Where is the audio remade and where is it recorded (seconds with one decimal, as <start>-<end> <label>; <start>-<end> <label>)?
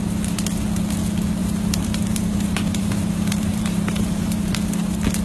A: 0.0-1.4 recorded; 1.4-4.5 remade; 4.5-5.2 recorded